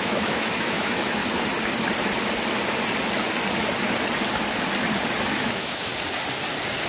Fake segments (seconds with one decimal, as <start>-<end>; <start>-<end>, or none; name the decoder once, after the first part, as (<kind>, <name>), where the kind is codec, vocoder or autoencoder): 0.0-1.2 (autoencoder, DAC-VAE); 5.3-5.9